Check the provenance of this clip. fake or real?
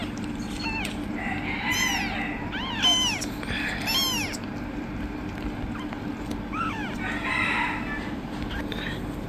real